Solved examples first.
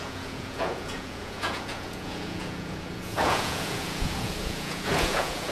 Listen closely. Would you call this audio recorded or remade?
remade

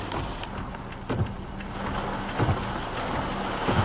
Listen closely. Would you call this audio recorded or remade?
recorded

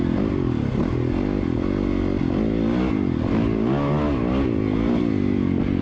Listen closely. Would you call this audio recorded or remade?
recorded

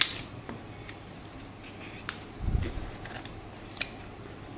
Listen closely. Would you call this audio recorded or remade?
recorded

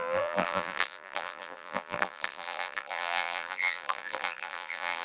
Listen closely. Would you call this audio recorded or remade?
remade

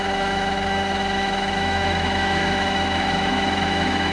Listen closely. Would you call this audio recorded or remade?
remade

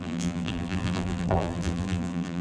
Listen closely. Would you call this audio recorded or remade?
remade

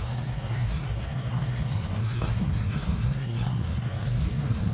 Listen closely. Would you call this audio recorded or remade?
remade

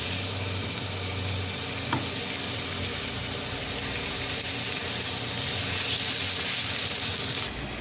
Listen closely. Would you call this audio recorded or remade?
recorded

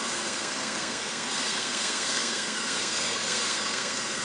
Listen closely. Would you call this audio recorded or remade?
remade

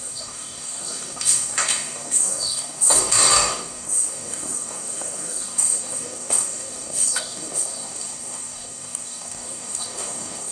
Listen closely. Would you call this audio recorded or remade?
remade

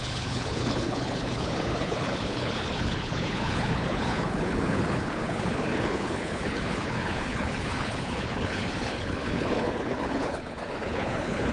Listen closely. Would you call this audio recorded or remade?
remade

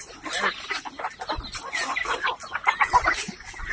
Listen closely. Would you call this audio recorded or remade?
recorded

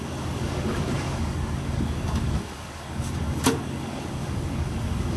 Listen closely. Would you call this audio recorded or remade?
remade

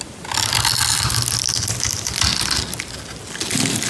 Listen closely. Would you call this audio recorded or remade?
recorded